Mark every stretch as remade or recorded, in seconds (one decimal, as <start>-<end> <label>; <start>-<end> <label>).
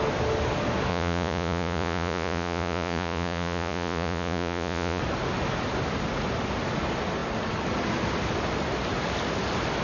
0.0-0.9 recorded; 0.9-5.0 remade; 5.0-9.8 recorded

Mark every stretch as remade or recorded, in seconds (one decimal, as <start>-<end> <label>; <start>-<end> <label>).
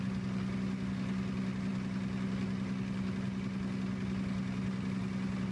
0.0-5.5 recorded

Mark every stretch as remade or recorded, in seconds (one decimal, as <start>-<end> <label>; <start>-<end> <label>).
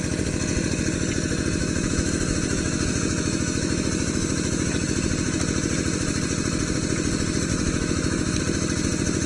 0.0-1.6 recorded; 1.6-4.7 remade; 4.7-7.5 recorded; 7.5-8.4 remade; 8.4-9.3 recorded